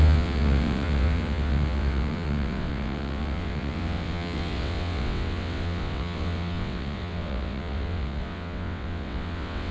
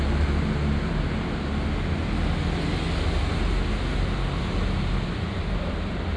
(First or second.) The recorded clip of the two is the second